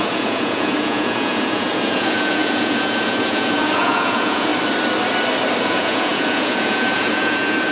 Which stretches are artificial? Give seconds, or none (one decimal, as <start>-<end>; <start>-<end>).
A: 0.0-4.5; 5.6-7.7